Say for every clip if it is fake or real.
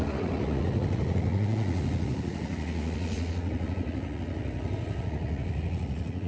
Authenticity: fake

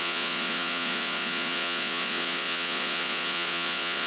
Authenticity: fake